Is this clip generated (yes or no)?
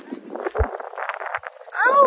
no